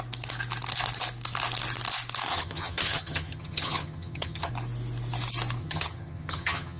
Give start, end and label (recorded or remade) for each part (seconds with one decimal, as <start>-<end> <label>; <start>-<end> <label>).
0.0-2.3 recorded; 2.3-4.5 remade; 4.5-5.6 recorded; 5.6-6.8 remade